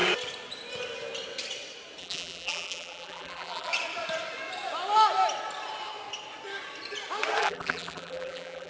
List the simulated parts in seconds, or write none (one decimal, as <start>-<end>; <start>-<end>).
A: 2.0-3.7; 7.4-8.7